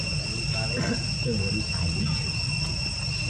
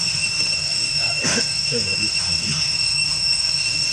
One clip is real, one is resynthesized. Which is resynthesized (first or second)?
second